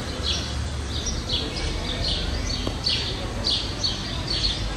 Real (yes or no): yes